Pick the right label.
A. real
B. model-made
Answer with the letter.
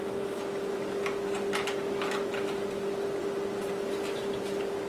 A